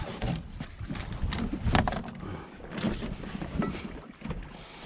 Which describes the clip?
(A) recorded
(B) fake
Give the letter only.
A